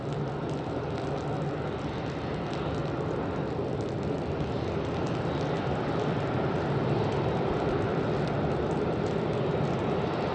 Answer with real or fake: real